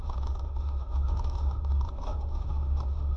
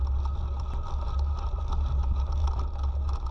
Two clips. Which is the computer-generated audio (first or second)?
first